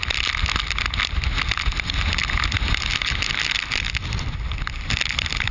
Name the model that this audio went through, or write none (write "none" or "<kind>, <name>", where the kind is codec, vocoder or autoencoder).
none